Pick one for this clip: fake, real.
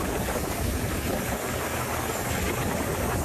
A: fake